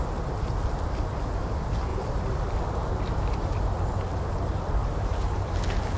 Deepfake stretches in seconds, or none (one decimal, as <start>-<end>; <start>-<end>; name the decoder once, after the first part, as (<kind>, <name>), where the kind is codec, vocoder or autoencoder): 1.9-3.5 (vocoder, BigVGAN v2); 4.8-5.5